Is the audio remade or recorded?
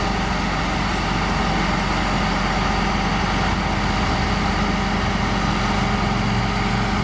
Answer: recorded